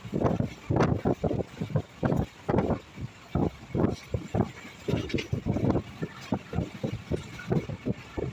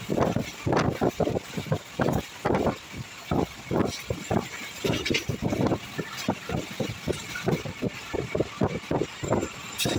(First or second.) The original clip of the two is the first